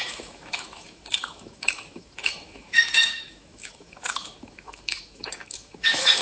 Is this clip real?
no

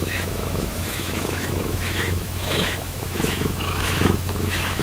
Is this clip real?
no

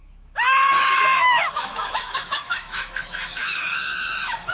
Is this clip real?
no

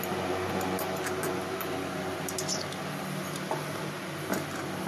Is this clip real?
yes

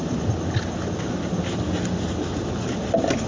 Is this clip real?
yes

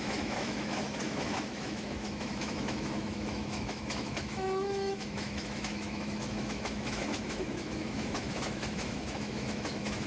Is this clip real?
no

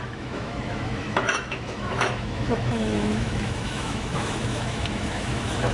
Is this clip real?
no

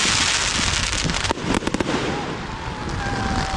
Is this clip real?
yes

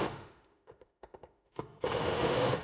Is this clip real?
no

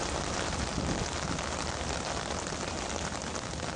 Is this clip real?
yes